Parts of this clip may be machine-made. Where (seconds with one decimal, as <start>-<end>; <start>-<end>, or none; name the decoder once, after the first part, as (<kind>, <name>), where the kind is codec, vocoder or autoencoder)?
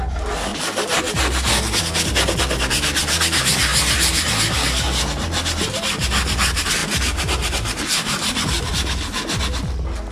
0.5-1.1 (vocoder, BigVGAN v2); 6.8-8.7